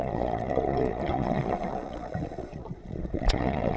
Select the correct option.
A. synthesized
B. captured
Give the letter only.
A